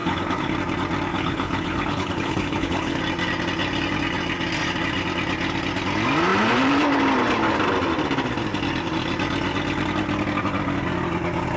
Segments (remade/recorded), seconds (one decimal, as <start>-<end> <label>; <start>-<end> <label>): 0.0-0.5 remade; 0.5-1.1 recorded; 1.1-3.0 remade; 3.0-11.6 recorded